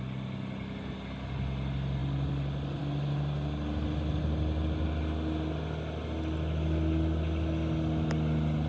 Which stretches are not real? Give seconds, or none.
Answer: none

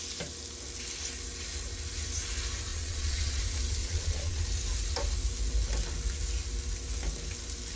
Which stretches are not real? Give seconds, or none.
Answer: 2.7-3.4 (vocoder, Vocos); 3.8-4.4

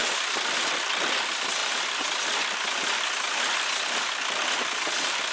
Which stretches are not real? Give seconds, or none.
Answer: none

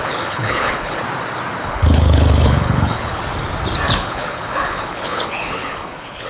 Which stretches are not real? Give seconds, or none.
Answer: 0.0-1.0 (codec, HILCodec); 1.6-3.2; 3.9-6.3

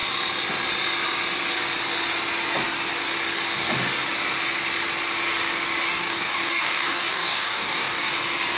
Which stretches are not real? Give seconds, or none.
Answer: 5.8-8.1 (codec, DAC)

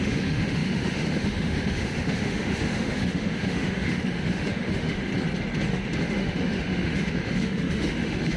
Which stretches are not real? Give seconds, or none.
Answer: 0.0-5.1 (autoencoder, DAC-VAE); 5.7-8.4

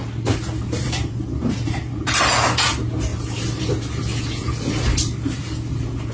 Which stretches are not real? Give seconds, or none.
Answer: 0.6-2.7 (vocoder, BigVGAN v2)

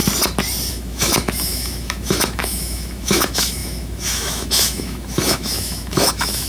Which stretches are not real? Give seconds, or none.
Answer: 0.7-6.5 (autoencoder, DAC-VAE)